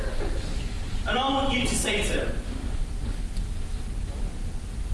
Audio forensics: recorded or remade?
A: remade